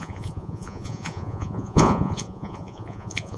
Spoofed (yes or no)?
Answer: yes